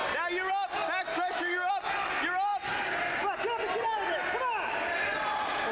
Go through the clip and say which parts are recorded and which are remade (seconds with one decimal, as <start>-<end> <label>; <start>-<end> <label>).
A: 0.0-1.1 recorded; 1.1-1.7 remade; 1.7-5.7 recorded

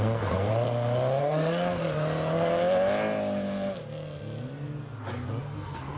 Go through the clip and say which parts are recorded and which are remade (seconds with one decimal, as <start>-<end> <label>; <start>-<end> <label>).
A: 0.0-0.5 remade; 0.5-1.2 recorded; 1.2-1.8 remade; 1.8-5.4 recorded; 5.4-6.0 remade

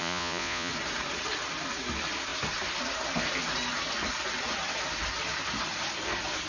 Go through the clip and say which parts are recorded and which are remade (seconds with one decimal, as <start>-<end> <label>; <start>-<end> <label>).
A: 0.0-0.7 remade; 0.7-6.5 recorded

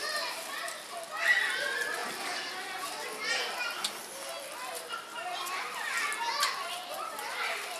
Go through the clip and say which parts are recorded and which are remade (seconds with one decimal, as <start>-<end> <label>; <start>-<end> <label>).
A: 0.0-7.8 recorded

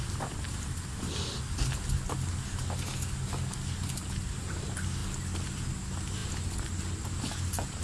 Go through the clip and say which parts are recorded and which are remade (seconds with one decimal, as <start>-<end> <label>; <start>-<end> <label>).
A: 0.0-7.8 recorded

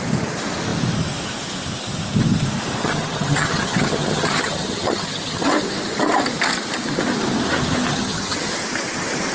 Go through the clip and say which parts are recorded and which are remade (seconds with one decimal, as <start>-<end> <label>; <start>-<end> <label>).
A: 0.0-2.8 recorded; 2.8-5.5 remade; 5.5-7.9 recorded; 7.9-8.5 remade; 8.5-9.3 recorded